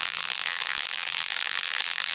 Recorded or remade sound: remade